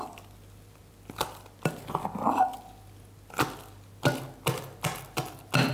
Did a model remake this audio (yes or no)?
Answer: no